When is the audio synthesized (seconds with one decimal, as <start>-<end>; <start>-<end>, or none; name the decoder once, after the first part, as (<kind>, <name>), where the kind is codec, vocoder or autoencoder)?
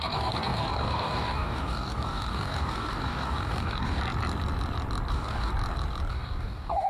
0.0-4.0 (codec, DAC); 5.1-5.5; 6.1-6.9